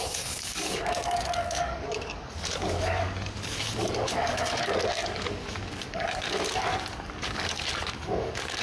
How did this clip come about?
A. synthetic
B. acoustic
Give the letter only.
A